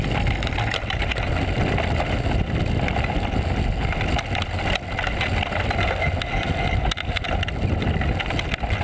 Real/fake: real